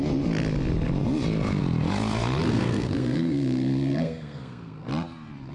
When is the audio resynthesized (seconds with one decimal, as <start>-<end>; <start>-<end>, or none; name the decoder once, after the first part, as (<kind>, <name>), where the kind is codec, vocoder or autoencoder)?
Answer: 2.5-4.9 (codec, SNAC)